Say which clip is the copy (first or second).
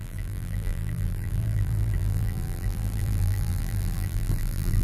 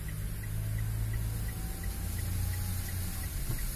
first